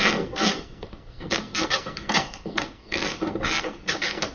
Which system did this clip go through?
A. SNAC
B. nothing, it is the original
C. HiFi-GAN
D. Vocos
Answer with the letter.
A